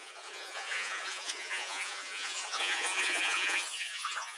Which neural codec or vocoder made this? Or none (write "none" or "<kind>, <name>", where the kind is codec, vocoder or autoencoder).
vocoder, Vocos